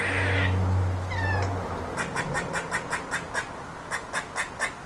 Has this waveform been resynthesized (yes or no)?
no